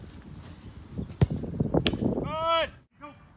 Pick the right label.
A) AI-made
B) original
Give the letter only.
B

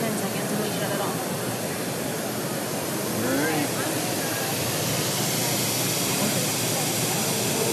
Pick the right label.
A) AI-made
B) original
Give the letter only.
B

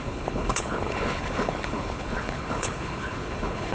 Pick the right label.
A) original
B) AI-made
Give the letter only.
B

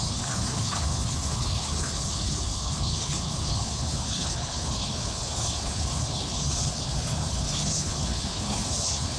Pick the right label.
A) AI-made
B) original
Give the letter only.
A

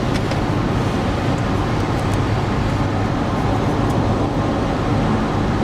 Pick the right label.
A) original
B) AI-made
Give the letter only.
A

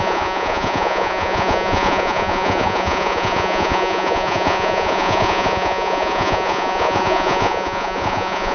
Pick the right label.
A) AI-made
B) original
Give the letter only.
A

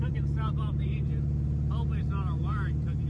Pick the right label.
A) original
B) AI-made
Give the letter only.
B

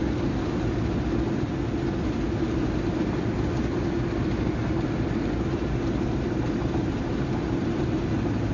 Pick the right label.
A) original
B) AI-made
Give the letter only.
A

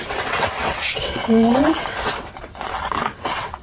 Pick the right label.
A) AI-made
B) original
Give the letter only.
A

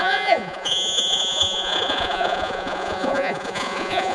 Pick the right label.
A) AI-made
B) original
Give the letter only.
A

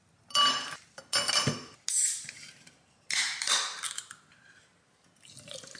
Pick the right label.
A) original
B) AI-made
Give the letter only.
A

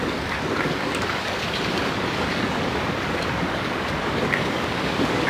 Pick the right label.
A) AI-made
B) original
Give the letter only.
A